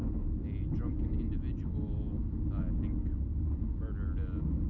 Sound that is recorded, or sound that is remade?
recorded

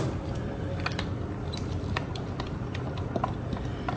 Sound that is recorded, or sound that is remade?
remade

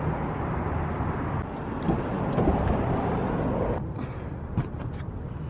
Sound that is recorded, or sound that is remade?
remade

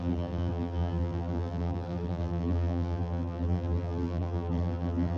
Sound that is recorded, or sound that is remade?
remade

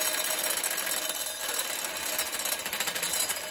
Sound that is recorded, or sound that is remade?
recorded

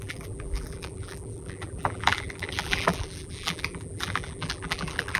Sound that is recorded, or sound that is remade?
remade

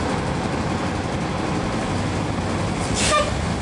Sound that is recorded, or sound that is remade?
recorded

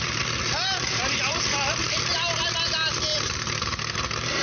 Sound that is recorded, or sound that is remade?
remade